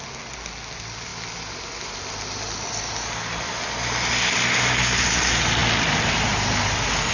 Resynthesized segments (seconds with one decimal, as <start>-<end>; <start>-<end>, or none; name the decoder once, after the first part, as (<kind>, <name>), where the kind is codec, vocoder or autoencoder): none